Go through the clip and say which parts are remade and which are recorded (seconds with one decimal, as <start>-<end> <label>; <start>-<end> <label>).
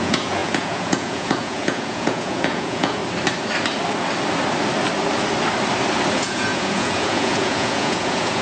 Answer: 0.0-3.0 remade; 3.0-6.1 recorded; 6.1-8.4 remade